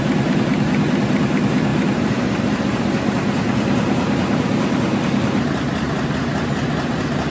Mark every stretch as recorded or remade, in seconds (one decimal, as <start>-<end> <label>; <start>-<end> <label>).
0.0-1.7 recorded; 1.7-6.1 remade; 6.1-7.3 recorded